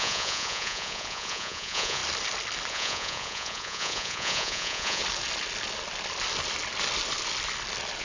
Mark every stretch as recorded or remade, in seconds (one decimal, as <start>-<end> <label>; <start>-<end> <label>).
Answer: 0.0-2.0 remade; 2.0-2.7 recorded; 2.7-5.0 remade; 5.0-8.0 recorded

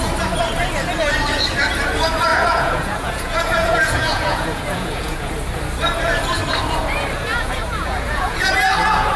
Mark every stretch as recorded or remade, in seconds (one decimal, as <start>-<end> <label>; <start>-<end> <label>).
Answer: 0.0-2.3 recorded; 2.3-5.3 remade; 5.3-7.3 recorded; 7.3-8.5 remade; 8.5-9.2 recorded